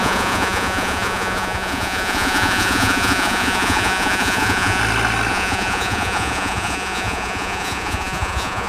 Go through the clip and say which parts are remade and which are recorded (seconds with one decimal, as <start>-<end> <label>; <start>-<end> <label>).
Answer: 0.0-4.8 remade; 4.8-5.3 recorded; 5.3-8.7 remade